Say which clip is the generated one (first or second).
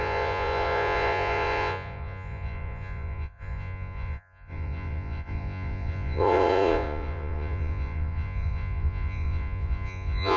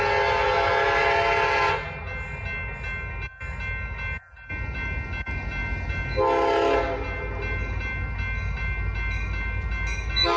first